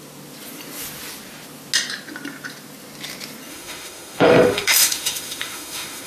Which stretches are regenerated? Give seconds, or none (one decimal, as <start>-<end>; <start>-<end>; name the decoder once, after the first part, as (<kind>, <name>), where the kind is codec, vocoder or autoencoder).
3.5-6.1 (autoencoder, DAC-VAE)